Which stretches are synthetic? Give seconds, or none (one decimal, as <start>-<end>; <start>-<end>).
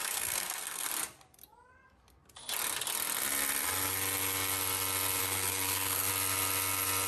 0.0-0.9; 5.2-6.1